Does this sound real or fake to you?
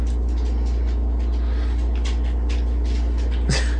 real